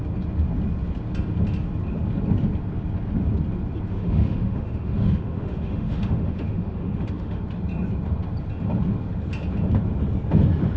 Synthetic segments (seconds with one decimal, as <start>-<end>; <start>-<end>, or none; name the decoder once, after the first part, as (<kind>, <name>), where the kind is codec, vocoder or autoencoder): 3.9-7.4 (autoencoder, DAC-VAE)